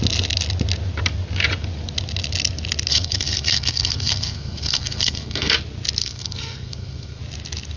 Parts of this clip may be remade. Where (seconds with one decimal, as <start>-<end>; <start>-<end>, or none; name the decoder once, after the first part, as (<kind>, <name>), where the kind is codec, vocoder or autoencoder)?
2.9-5.5 (codec, SNAC); 6.0-7.2